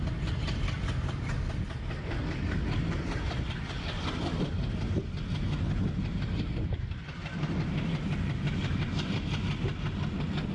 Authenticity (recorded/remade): recorded